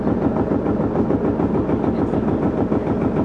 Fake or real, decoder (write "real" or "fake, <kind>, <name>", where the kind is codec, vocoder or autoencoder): real